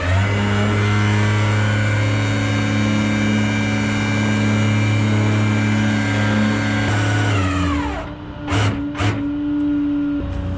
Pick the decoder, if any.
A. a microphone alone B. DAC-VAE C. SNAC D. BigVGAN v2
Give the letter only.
A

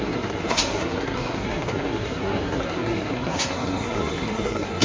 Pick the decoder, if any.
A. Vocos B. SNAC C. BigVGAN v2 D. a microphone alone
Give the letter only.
B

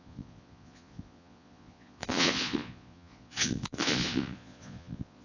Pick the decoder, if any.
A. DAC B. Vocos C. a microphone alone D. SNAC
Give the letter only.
B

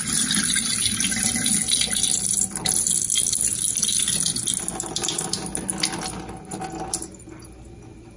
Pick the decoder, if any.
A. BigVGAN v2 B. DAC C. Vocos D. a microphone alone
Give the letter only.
D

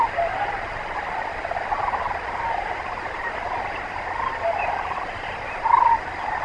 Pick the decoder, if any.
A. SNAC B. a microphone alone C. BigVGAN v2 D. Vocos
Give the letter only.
B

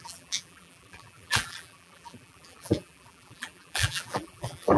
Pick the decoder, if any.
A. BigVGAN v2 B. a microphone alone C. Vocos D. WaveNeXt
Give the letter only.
A